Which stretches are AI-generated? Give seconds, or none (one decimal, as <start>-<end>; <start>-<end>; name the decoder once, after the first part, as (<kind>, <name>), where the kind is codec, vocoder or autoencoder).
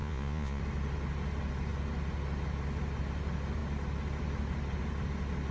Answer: 0.0-0.6 (vocoder, Vocos)